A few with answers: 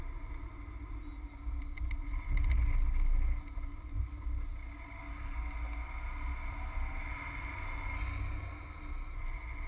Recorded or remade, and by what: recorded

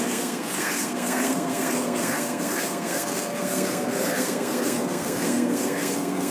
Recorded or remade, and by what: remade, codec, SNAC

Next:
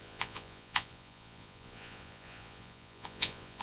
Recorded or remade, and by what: remade, vocoder, Vocos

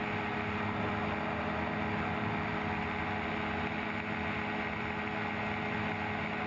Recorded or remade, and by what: recorded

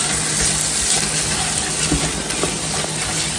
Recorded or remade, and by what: recorded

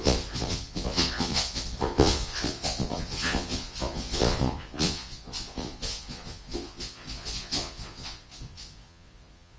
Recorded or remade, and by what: remade, vocoder, Vocos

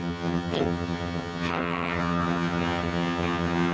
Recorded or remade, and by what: remade, vocoder, HiFi-GAN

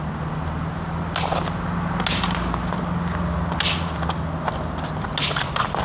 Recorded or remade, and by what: recorded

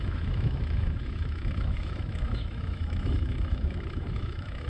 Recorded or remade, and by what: remade, autoencoder, DAC-VAE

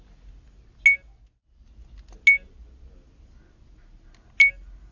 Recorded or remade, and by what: recorded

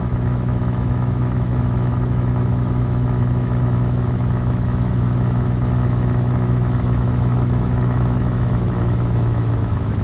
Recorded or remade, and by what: remade, autoencoder, DAC-VAE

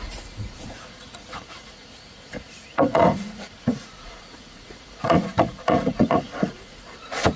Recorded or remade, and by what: remade, vocoder, Vocos